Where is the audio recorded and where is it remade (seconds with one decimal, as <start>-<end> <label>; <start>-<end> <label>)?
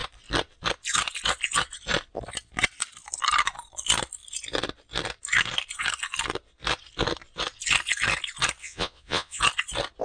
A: 0.0-8.6 recorded; 8.6-9.4 remade; 9.4-10.0 recorded